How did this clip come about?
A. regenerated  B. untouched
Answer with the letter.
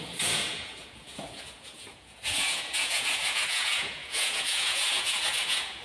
A